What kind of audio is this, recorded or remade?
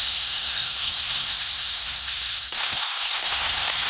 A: remade